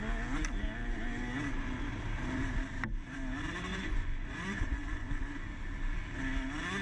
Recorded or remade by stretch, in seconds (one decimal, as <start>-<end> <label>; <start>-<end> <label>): 0.0-3.7 recorded; 3.7-5.2 remade; 5.2-6.8 recorded

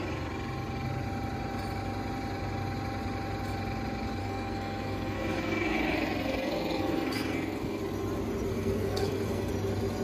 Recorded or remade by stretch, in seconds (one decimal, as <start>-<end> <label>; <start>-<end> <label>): 0.0-4.2 recorded; 4.2-7.8 remade; 7.8-8.5 recorded; 8.5-9.5 remade; 9.5-10.0 recorded

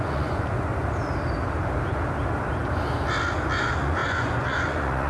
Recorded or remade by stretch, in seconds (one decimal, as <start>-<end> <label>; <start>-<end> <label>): 0.0-0.7 remade; 0.7-3.6 recorded; 3.6-5.1 remade

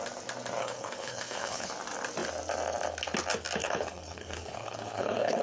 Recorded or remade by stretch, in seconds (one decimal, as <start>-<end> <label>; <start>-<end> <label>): 0.0-0.6 recorded; 0.6-1.7 remade; 1.7-3.6 recorded; 3.6-5.4 remade